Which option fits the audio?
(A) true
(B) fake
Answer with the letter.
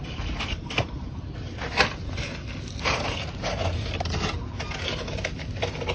A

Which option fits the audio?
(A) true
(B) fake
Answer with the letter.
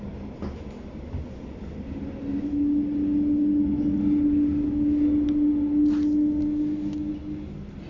A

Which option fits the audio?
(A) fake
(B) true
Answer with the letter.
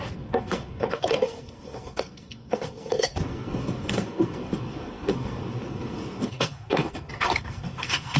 A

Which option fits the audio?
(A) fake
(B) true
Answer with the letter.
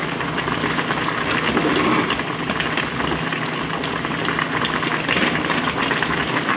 B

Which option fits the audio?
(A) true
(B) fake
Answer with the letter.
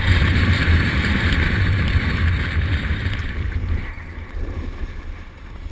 B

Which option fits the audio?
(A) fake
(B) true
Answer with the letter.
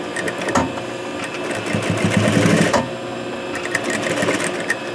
B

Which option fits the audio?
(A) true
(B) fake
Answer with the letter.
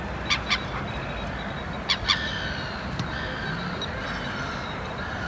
A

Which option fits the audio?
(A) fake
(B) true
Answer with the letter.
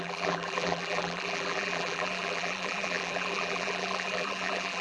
A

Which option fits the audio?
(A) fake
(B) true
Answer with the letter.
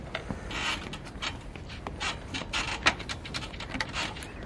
B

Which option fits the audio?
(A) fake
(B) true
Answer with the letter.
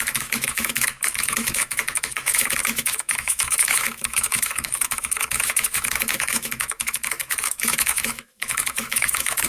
A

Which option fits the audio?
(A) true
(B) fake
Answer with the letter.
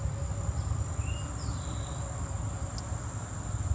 A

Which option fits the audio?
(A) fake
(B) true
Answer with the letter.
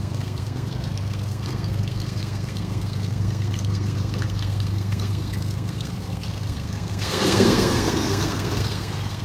A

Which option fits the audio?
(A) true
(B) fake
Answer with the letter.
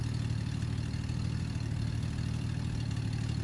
A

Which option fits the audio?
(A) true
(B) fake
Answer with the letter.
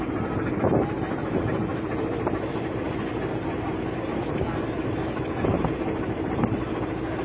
A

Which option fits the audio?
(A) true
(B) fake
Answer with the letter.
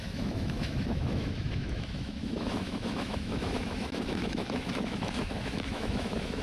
B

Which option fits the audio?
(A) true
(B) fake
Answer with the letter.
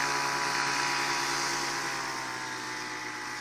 A